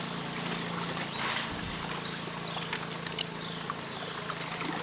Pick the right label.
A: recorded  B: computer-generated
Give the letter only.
A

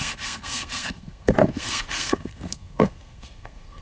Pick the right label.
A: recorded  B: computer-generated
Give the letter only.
B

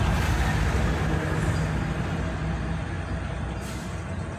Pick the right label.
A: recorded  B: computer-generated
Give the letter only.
A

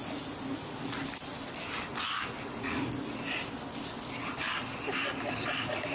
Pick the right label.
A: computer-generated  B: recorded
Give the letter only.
B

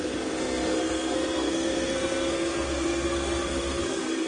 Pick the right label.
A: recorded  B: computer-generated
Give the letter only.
B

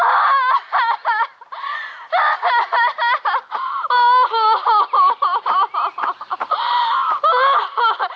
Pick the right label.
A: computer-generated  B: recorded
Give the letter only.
B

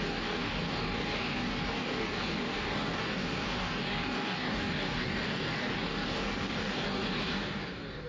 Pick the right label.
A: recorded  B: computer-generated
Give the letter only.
B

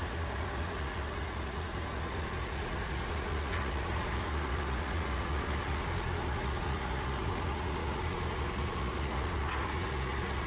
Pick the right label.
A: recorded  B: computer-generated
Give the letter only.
B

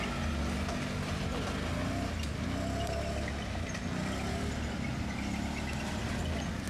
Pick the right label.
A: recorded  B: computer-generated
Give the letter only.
A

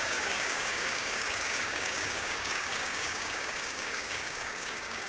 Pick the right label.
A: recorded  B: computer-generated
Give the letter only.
B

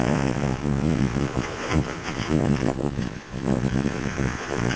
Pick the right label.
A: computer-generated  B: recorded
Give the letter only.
A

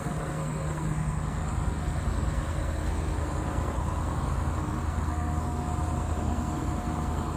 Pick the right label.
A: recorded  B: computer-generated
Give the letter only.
B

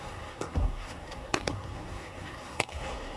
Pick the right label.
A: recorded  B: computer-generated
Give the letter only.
B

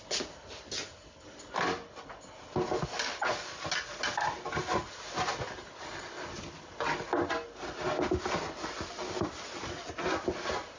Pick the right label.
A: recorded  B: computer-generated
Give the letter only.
A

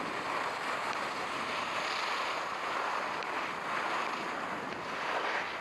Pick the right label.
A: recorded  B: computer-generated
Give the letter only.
A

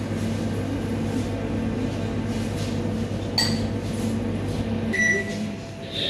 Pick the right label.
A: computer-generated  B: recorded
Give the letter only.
B